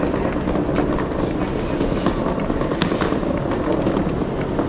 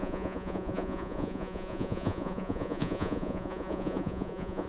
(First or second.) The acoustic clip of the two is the first